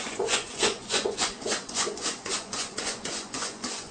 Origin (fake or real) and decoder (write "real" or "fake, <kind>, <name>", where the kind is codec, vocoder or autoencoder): fake, vocoder, Vocos